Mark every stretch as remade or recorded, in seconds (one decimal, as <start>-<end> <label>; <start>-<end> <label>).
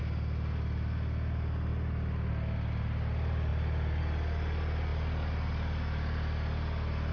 0.0-7.1 recorded